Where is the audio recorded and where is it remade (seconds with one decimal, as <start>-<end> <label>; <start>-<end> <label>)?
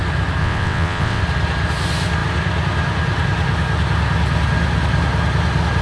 0.0-0.4 recorded; 0.4-1.2 remade; 1.2-5.8 recorded